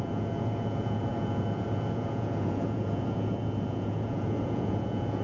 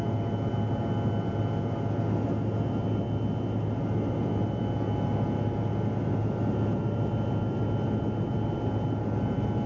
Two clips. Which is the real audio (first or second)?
second